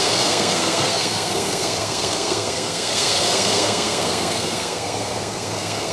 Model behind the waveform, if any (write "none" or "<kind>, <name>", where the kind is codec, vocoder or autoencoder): codec, SNAC